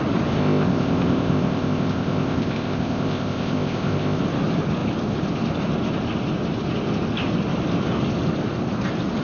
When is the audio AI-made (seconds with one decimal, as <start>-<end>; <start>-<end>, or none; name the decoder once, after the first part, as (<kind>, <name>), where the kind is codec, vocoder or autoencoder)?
0.4-4.2 (codec, ZipCodec)